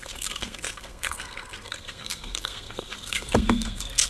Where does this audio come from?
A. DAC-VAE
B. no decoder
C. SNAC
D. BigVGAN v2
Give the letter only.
C